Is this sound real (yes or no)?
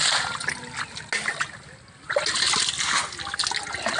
yes